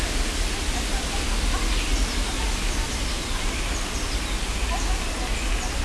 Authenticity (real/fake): real